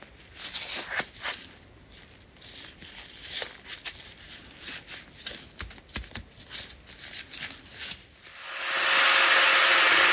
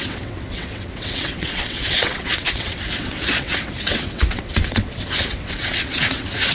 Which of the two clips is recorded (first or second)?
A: first